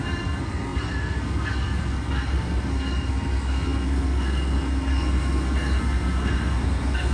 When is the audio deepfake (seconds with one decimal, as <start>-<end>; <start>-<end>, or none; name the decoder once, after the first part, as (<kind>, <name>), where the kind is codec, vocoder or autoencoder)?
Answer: 0.0-7.1 (codec, SNAC)